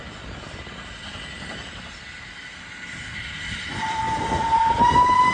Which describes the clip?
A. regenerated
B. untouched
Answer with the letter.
B